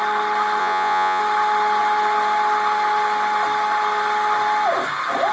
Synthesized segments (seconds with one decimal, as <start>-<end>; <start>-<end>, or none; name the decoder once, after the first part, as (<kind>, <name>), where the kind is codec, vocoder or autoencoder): 0.6-1.2 (vocoder, Vocos)